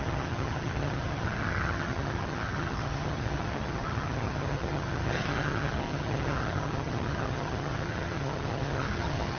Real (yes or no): no